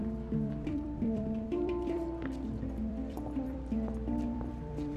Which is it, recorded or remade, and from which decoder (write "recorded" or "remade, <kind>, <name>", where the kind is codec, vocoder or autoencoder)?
remade, vocoder, BigVGAN v2